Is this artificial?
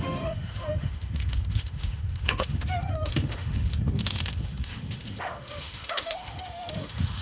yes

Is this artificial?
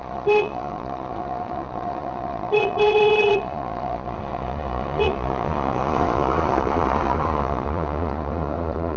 yes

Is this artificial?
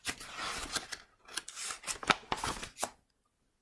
no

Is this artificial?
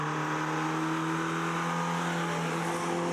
no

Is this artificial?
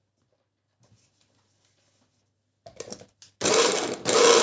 no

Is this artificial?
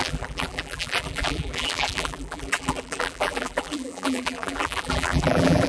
yes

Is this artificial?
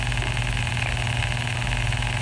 no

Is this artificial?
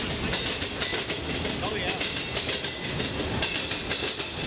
no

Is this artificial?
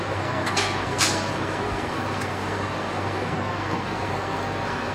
yes